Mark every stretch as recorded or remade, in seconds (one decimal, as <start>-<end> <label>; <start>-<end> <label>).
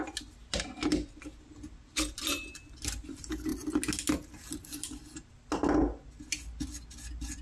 0.0-7.4 recorded